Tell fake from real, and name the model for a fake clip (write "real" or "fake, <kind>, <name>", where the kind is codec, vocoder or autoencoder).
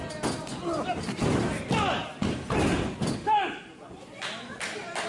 real